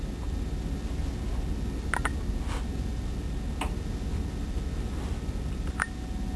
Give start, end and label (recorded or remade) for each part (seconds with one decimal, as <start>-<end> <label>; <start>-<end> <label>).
0.0-6.4 recorded